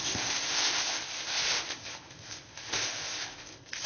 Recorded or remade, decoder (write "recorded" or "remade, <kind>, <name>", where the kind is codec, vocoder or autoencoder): remade, codec, ZipCodec